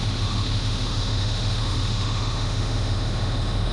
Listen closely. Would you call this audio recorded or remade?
remade